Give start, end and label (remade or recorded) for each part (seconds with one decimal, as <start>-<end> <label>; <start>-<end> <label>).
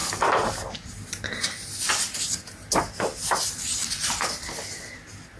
0.0-2.5 remade; 2.5-5.4 recorded